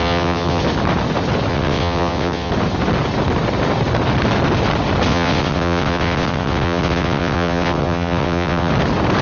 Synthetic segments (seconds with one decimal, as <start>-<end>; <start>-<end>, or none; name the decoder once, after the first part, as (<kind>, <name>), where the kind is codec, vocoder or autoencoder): 0.0-0.6 (vocoder, WaveNeXt); 1.5-2.5; 5.1-8.7

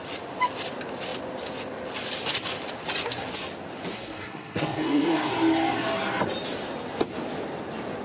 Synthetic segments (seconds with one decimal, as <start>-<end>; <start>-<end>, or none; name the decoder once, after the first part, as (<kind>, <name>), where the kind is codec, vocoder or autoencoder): 3.9-5.3 (codec, SNAC)

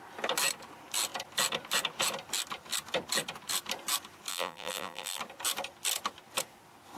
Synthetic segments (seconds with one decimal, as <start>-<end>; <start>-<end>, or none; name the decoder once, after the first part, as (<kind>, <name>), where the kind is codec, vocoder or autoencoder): 4.3-5.2 (vocoder, BigVGAN v2)

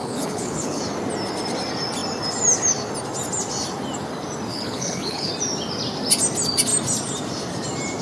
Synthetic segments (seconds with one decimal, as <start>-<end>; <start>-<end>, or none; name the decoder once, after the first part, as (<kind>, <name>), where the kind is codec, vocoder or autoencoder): 0.0-0.8 (codec, HILCodec); 4.5-5.3

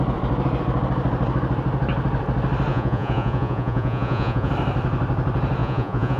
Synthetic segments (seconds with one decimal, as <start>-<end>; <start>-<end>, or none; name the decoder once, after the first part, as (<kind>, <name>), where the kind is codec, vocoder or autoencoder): 2.7-4.5 (vocoder, Vocos); 5.6-6.2